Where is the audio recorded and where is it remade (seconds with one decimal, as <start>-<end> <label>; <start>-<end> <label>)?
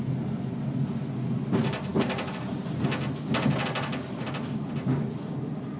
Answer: 0.0-5.8 recorded